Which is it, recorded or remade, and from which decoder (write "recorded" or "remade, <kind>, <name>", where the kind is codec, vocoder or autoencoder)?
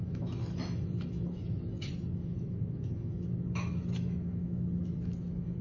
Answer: remade, autoencoder, DAC-VAE